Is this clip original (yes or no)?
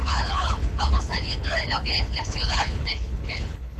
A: no